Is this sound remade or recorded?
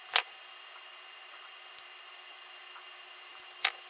recorded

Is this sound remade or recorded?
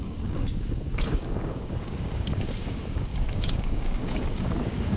remade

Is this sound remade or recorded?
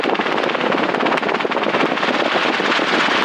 recorded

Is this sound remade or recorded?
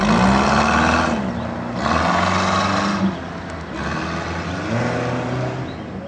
recorded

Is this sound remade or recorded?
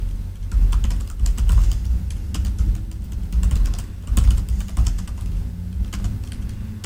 recorded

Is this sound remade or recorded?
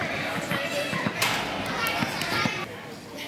recorded